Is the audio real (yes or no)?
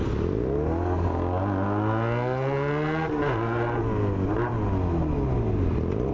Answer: yes